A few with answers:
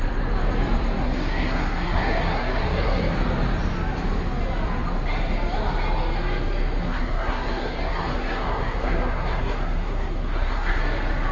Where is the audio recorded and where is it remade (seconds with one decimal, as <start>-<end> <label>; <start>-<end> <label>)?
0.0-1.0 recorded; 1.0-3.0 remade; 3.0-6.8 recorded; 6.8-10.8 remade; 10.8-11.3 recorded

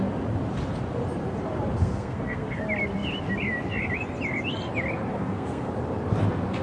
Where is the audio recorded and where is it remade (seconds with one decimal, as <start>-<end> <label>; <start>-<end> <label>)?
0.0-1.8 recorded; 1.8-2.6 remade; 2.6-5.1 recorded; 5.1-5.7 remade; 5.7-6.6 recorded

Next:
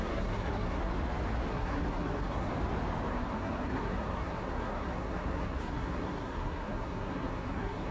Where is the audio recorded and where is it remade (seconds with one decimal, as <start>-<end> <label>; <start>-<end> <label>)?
0.0-0.9 remade; 0.9-1.5 recorded; 1.5-2.5 remade; 2.5-3.1 recorded; 3.1-7.9 remade

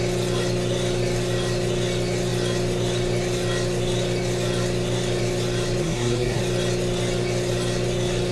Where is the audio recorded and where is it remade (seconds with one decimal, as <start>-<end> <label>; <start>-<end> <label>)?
0.0-5.8 recorded; 5.8-6.4 remade; 6.4-8.3 recorded

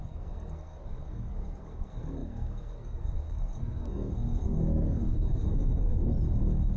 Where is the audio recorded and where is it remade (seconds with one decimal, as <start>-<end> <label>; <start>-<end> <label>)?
0.0-6.0 remade; 6.0-6.8 recorded

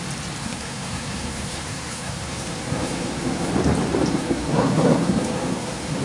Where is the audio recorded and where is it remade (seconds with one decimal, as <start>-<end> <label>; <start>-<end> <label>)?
0.0-0.4 recorded; 0.4-3.5 remade; 3.5-4.1 recorded; 4.1-6.0 remade

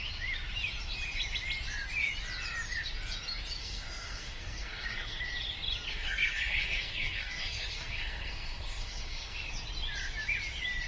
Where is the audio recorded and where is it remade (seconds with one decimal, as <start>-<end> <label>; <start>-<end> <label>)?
0.0-3.6 recorded; 3.6-5.2 remade; 5.2-5.9 recorded; 5.9-9.5 remade; 9.5-10.9 recorded

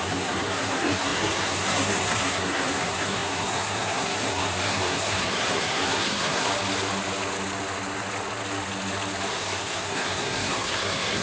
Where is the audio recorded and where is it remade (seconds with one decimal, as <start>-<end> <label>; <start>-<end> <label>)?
0.0-6.5 remade; 6.5-9.3 recorded; 9.3-11.2 remade